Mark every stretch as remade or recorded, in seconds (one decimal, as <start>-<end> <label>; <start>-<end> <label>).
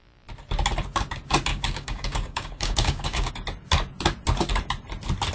0.0-1.5 recorded; 1.5-3.3 remade; 3.3-5.3 recorded